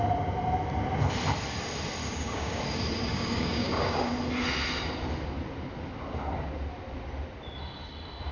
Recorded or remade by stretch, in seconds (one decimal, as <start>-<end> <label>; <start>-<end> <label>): 0.0-2.0 recorded; 2.0-2.6 remade; 2.6-3.1 recorded; 3.1-4.1 remade; 4.1-8.3 recorded